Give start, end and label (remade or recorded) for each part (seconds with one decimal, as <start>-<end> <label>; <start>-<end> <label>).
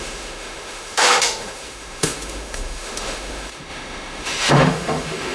0.0-5.3 remade